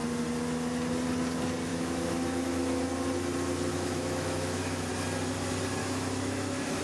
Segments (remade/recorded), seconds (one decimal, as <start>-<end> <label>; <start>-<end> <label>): 0.0-1.7 recorded; 1.7-2.8 remade; 2.8-3.7 recorded; 3.7-4.9 remade; 4.9-5.8 recorded; 5.8-6.8 remade